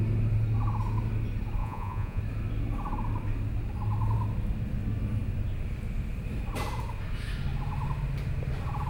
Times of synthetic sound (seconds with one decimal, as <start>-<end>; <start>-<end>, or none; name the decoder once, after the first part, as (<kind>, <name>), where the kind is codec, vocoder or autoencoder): 1.6-2.2 (vocoder, Vocos)